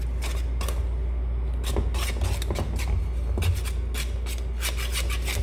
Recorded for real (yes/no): yes